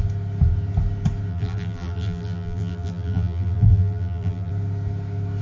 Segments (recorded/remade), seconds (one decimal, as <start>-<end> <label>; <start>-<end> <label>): 0.0-1.3 recorded; 1.3-4.5 remade; 4.5-5.4 recorded